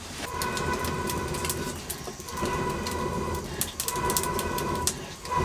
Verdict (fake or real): real